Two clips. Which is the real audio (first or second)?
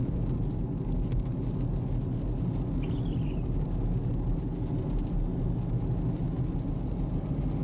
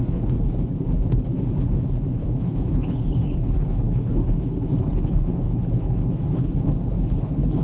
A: first